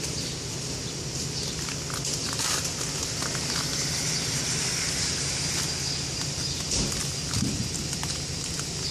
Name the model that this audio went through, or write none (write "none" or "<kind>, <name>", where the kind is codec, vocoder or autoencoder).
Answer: none